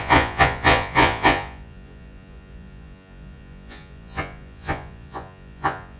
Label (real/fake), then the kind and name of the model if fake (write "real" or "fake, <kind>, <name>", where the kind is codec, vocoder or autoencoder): fake, vocoder, Vocos